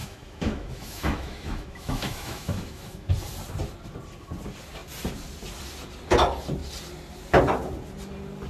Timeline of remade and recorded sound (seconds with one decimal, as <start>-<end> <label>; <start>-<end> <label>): 0.0-3.1 remade; 3.1-8.5 recorded